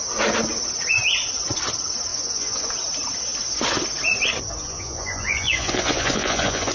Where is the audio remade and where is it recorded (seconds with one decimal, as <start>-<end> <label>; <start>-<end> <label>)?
0.0-2.1 recorded; 2.1-2.7 remade; 2.7-4.6 recorded; 4.6-6.7 remade